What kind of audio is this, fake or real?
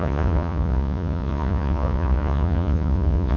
fake